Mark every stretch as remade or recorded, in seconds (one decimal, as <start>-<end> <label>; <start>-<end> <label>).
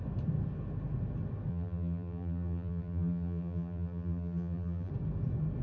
0.0-1.5 recorded; 1.5-4.9 remade; 4.9-5.6 recorded